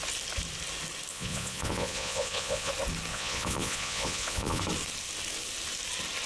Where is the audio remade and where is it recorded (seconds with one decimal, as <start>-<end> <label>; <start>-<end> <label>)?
0.0-1.1 recorded; 1.1-2.7 remade; 2.7-3.1 recorded; 3.1-4.6 remade; 4.6-6.3 recorded